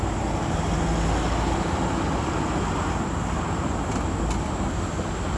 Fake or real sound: real